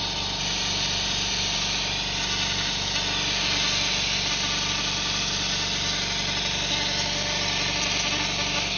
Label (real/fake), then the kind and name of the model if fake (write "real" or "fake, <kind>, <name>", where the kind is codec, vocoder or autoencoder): real